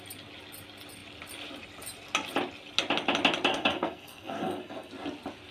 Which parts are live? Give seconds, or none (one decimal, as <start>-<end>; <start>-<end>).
0.0-3.5; 4.9-5.5